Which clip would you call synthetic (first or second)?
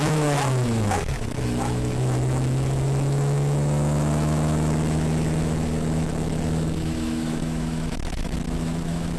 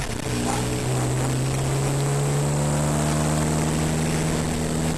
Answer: first